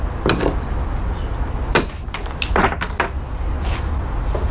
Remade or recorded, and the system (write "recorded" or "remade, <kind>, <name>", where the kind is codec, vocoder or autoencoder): recorded